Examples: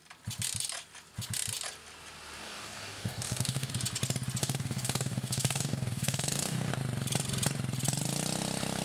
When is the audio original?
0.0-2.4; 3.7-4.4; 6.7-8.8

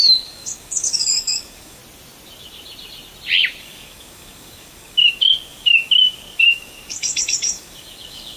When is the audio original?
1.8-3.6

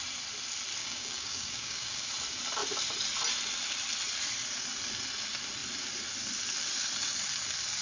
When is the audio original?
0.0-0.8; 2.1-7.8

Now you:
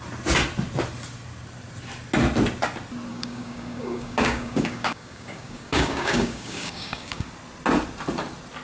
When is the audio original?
0.0-3.1; 7.3-8.6

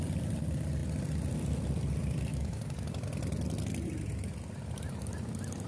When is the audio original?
0.0-2.3; 2.9-5.7